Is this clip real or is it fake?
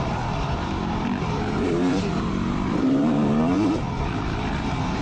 fake